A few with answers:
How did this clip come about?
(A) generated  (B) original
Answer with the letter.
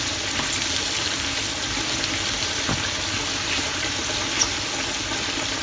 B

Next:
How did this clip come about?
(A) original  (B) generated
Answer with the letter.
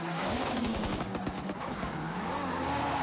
B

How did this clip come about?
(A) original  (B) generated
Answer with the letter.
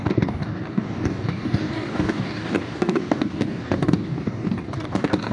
B